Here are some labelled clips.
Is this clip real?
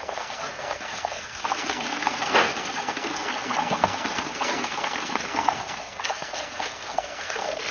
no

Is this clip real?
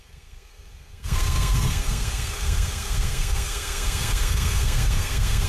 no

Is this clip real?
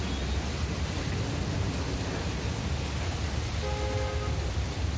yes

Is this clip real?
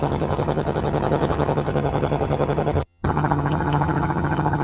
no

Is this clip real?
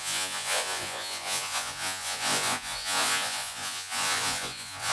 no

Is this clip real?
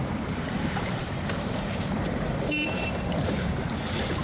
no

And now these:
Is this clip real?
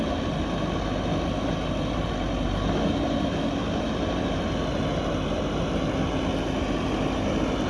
yes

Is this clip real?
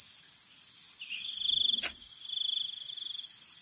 yes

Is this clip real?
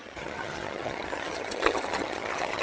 no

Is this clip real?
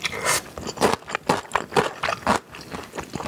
yes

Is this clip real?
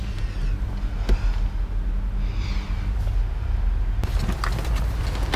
yes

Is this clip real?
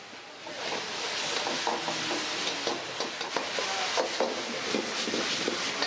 yes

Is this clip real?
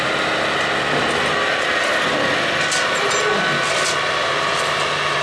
yes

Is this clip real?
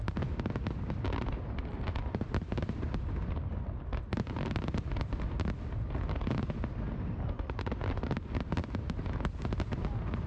yes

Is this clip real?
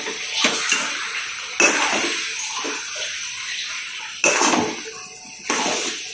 yes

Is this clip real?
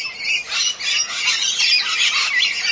yes